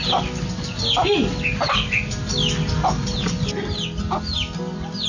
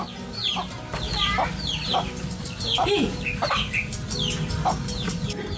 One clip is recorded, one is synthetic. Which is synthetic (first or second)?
second